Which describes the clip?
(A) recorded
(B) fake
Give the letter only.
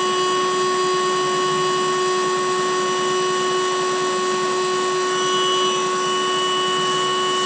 A